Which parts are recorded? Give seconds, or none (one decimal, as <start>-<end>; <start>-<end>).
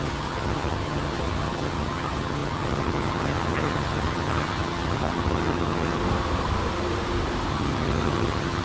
6.0-7.5